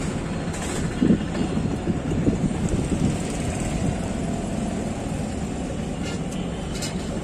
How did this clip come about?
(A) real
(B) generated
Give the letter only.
A